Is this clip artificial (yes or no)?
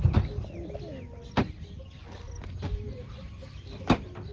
no